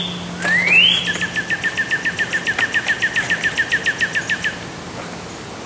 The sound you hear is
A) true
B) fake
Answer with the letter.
A